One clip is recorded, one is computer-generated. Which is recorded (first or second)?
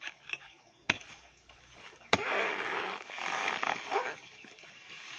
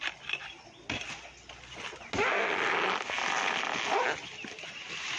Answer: second